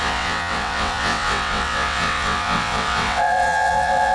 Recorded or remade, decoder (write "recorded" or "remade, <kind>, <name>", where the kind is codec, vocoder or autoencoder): remade, vocoder, WaveNeXt